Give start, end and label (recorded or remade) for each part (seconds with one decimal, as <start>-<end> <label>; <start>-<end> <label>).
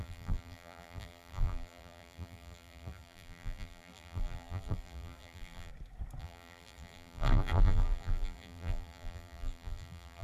0.0-5.7 remade; 5.7-6.2 recorded; 6.2-10.2 remade